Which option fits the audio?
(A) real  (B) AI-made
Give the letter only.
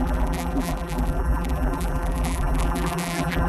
B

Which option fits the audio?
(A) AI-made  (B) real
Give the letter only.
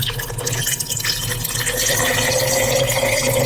B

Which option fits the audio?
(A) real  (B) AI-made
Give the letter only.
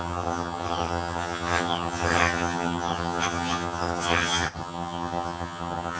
B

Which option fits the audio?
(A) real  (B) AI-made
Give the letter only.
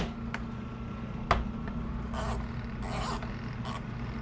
A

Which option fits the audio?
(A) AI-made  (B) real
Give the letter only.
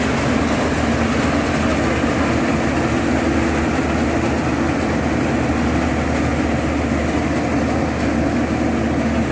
B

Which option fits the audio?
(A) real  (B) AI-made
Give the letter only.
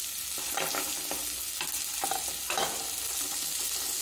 A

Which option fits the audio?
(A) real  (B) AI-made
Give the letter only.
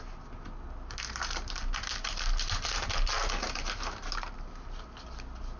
A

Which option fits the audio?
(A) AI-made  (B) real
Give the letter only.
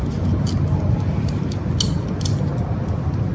B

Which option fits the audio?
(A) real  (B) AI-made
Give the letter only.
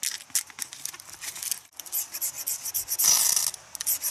A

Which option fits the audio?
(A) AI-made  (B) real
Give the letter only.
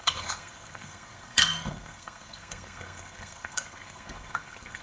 A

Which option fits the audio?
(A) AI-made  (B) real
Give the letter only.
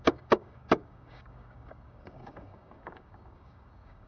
A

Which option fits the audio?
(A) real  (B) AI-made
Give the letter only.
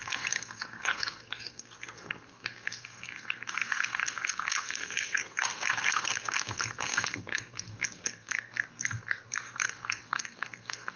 B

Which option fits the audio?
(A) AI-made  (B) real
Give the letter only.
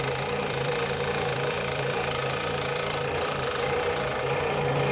A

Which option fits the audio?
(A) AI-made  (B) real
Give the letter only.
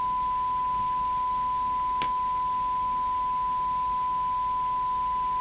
B